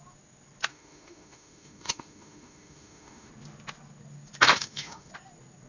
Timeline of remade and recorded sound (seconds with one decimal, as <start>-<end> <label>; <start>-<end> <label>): 0.0-0.7 recorded; 0.7-3.3 remade; 3.3-4.5 recorded; 4.5-5.1 remade; 5.1-5.7 recorded